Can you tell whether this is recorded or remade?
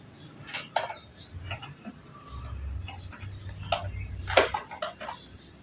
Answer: recorded